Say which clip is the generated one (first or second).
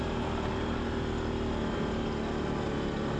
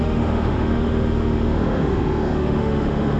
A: second